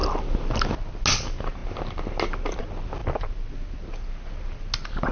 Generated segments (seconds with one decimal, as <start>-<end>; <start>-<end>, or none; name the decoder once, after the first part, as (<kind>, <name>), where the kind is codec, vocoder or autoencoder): none